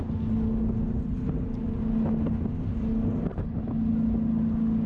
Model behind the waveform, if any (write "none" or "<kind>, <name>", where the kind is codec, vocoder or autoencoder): none